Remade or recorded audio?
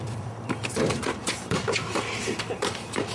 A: remade